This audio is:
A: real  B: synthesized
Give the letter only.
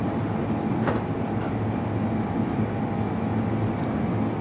A